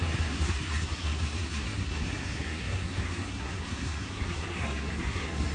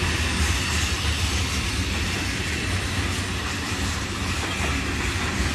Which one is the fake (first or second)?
first